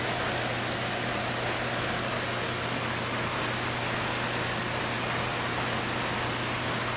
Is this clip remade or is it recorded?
recorded